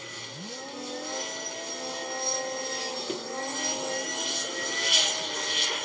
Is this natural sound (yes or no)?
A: yes